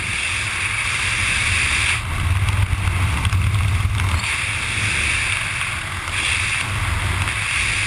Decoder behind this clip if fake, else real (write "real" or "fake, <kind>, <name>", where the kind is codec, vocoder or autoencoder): real